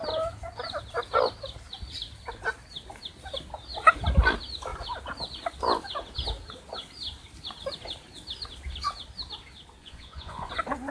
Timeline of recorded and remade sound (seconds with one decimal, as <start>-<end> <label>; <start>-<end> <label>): 0.0-9.8 recorded; 9.8-10.5 remade; 10.5-10.9 recorded